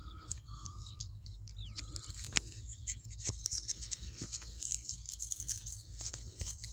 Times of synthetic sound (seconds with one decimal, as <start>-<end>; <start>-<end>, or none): 0.0-1.5; 2.1-6.7

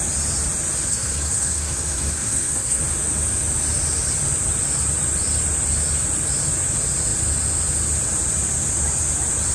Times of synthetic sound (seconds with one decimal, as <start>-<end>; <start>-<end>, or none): 0.9-2.8

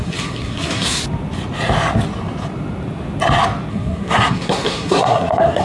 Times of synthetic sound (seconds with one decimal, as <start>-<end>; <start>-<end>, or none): 0.0-1.0; 3.7-5.6

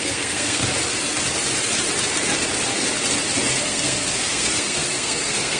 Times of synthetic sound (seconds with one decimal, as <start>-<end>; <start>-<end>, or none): 0.0-0.6; 3.6-5.6

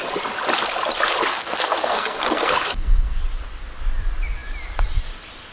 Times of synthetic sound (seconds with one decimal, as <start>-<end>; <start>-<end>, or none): 1.3-3.2